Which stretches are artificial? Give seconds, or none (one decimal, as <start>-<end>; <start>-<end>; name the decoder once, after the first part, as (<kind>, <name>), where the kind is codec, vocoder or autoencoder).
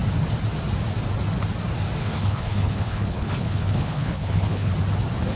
2.0-4.7 (codec, HILCodec)